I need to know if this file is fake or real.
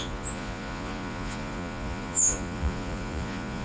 fake